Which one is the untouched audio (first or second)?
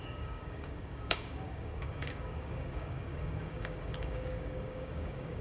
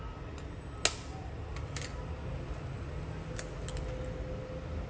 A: second